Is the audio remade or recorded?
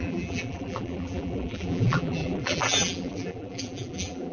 remade